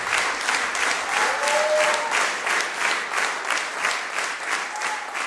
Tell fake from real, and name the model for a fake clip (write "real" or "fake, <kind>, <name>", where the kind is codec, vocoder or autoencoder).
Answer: real